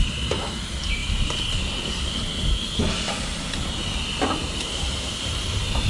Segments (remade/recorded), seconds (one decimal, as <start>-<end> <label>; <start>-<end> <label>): 0.0-4.4 recorded; 4.4-5.9 remade